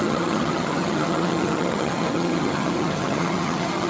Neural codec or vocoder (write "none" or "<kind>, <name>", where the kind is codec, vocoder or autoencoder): vocoder, HiFi-GAN